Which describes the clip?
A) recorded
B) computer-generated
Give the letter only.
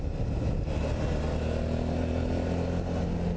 A